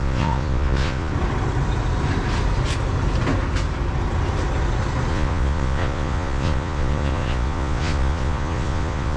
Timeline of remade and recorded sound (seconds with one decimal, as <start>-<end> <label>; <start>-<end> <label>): 0.0-1.1 remade; 1.1-5.1 recorded; 5.1-9.2 remade